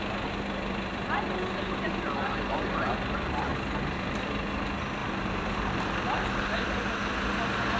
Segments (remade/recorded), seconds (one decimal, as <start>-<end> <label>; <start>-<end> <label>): 0.0-5.0 recorded; 5.0-5.5 remade; 5.5-7.8 recorded